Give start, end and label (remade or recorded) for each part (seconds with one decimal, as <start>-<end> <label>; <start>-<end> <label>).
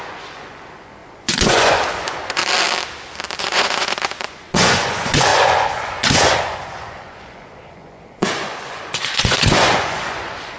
0.0-2.4 remade; 2.4-3.4 recorded; 3.4-10.6 remade